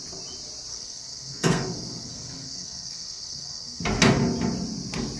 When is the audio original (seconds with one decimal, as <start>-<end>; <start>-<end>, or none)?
0.0-0.7; 3.8-5.2